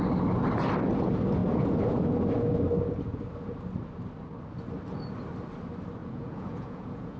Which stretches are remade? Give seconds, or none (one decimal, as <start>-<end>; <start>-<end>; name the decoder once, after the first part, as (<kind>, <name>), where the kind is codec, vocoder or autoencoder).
6.0-7.2 (vocoder, Vocos)